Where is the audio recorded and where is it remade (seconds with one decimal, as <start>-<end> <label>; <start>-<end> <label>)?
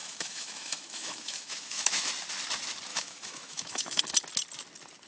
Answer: 0.0-2.1 remade; 2.1-2.9 recorded; 2.9-4.0 remade; 4.0-5.1 recorded